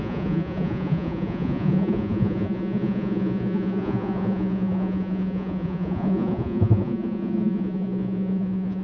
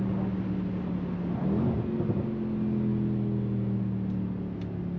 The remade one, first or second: first